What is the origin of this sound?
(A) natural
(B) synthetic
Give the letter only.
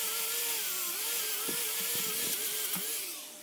A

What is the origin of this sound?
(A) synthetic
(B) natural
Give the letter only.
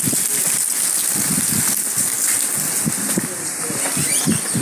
B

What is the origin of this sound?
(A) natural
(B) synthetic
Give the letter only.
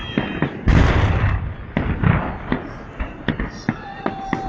A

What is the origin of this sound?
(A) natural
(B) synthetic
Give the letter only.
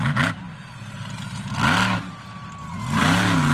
A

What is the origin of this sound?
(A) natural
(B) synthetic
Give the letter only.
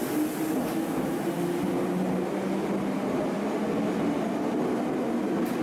A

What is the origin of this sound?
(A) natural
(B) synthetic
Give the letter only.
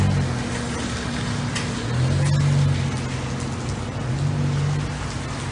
A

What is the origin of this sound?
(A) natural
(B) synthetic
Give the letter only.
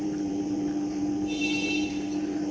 B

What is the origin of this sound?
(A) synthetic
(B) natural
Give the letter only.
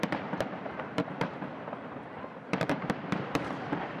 A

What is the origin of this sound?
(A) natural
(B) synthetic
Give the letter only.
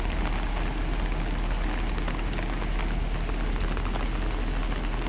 A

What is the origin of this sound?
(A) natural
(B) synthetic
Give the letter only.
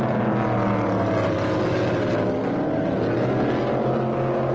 A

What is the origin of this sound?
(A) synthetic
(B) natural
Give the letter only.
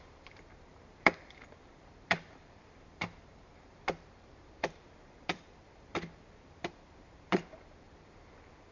A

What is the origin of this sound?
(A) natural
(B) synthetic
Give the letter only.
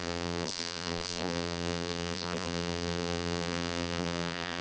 B